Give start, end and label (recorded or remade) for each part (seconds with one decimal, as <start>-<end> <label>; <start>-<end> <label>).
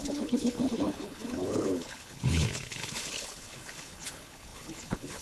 0.0-5.2 remade